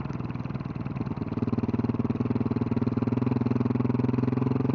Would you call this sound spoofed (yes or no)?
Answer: no